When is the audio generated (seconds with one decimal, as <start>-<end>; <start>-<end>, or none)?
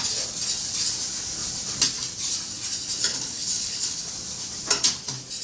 3.1-4.1